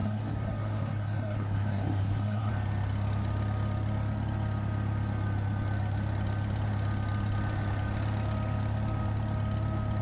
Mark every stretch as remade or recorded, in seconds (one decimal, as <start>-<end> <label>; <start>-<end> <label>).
0.0-2.5 remade; 2.5-10.0 recorded